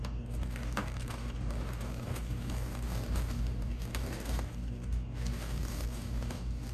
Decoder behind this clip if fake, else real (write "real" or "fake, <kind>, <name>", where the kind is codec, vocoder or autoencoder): fake, codec, DAC